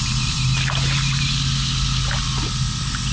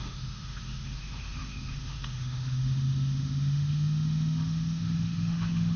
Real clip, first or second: first